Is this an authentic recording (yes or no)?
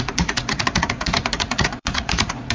no